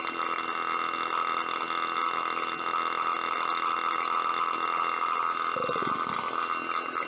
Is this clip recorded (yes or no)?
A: yes